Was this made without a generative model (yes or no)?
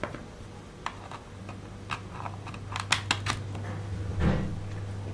yes